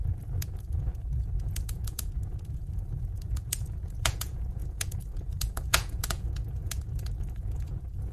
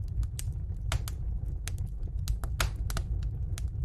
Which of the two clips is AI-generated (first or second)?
first